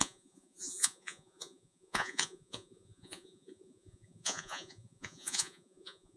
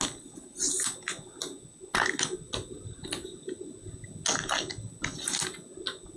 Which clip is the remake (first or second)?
first